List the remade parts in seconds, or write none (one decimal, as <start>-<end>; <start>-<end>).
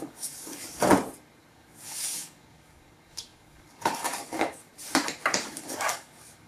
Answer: 0.0-0.9; 1.5-4.7; 5.4-6.5